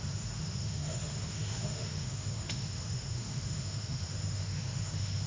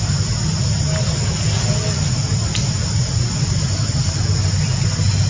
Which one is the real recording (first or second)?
second